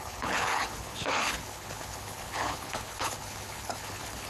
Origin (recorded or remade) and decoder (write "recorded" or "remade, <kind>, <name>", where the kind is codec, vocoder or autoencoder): remade, codec, HILCodec